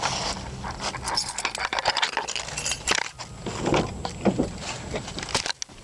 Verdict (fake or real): real